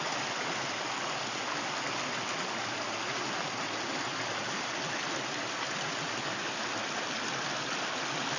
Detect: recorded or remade recorded